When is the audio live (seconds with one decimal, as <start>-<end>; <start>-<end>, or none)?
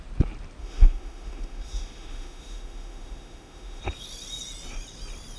0.0-0.6; 3.8-5.4